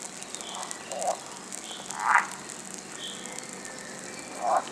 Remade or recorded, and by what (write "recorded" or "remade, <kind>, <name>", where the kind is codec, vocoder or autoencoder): recorded